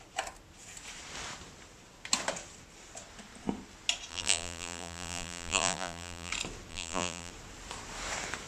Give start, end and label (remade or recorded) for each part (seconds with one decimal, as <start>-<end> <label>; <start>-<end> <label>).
0.0-4.1 recorded; 4.1-6.3 remade; 6.3-6.7 recorded; 6.7-7.3 remade; 7.3-8.5 recorded